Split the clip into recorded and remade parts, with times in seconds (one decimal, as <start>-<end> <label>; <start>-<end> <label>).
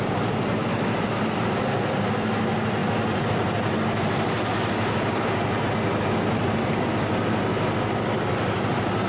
0.0-0.6 recorded; 0.6-1.1 remade; 1.1-9.1 recorded